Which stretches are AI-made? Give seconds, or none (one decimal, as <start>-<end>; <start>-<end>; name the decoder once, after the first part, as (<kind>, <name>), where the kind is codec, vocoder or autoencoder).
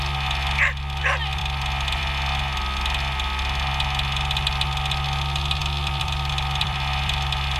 1.4-2.0 (vocoder, BigVGAN v2); 5.6-7.6